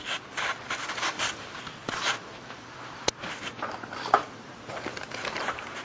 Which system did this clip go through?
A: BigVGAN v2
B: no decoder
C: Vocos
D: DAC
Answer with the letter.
A